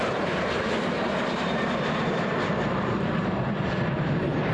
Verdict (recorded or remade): remade